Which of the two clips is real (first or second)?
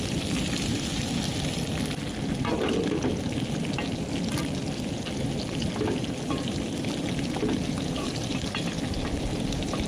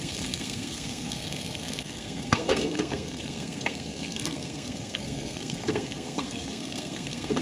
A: first